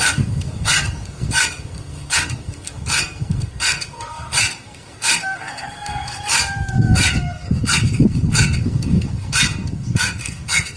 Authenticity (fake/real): fake